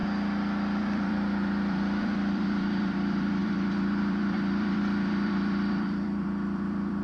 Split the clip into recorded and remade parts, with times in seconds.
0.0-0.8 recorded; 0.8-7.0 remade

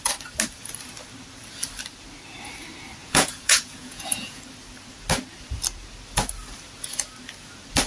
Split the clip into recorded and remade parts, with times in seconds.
0.0-3.0 recorded; 3.0-4.4 remade; 4.4-7.9 recorded

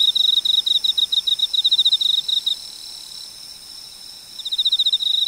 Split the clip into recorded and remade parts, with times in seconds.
0.0-5.3 recorded

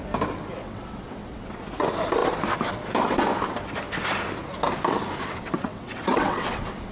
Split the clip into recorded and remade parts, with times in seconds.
0.0-0.6 recorded; 0.6-1.6 remade; 1.6-5.2 recorded; 5.2-6.9 remade

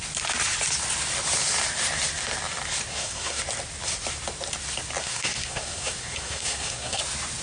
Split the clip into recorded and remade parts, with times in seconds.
0.0-2.9 recorded; 2.9-3.4 remade; 3.4-5.0 recorded; 5.0-7.0 remade; 7.0-7.4 recorded

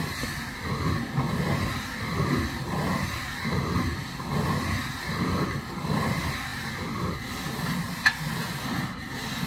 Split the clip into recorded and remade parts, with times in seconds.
0.0-9.5 recorded

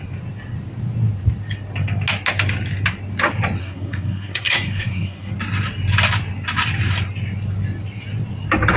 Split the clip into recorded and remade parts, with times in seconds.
0.0-3.6 recorded; 3.6-5.3 remade; 5.3-8.8 recorded